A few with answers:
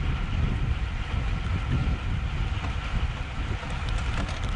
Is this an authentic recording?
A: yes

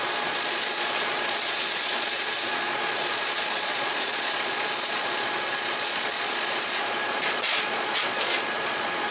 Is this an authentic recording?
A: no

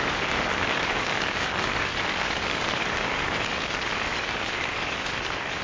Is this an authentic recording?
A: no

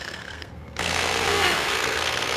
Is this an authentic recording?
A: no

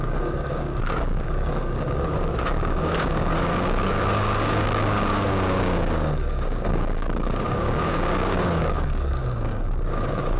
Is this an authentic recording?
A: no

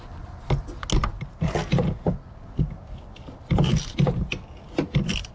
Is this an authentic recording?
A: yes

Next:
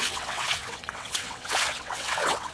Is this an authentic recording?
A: no